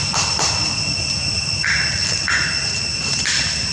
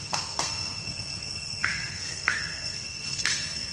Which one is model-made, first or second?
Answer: second